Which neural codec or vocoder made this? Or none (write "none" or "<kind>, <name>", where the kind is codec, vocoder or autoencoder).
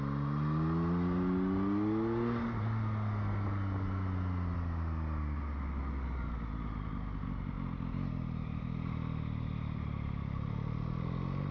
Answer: none